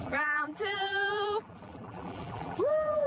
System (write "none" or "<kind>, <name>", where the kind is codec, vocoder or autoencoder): vocoder, BigVGAN v2